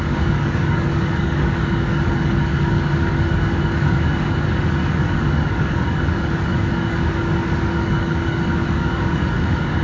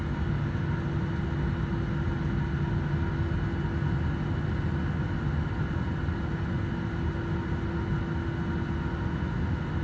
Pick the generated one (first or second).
first